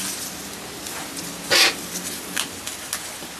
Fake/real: real